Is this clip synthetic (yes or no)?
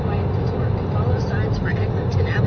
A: no